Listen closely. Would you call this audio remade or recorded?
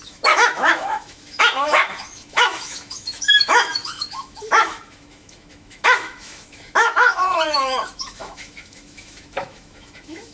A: remade